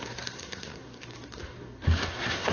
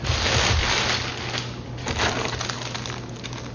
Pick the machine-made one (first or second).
first